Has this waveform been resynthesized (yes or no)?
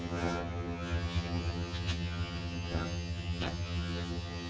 yes